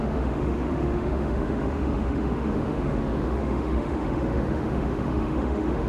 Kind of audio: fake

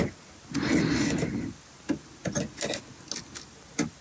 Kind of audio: real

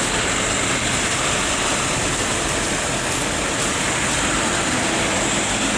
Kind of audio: real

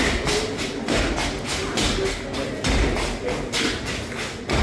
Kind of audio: real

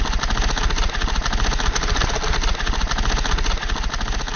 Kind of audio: real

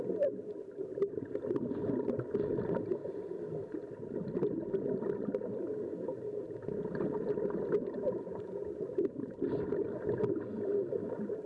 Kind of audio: real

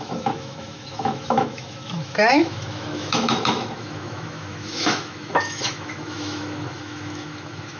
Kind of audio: fake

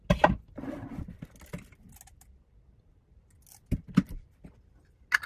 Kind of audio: real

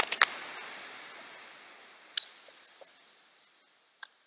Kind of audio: real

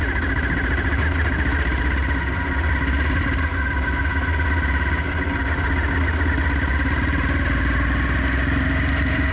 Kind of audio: real